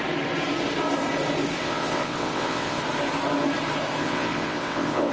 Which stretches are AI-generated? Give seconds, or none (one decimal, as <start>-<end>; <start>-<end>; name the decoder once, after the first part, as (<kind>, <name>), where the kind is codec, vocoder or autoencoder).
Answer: 1.6-2.8 (vocoder, WaveNeXt); 4.0-5.1